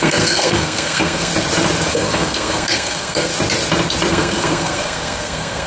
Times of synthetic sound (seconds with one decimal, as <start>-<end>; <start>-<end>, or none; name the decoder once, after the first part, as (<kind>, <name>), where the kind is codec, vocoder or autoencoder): 0.0-1.3 (codec, SNAC); 1.9-3.3; 4.1-5.7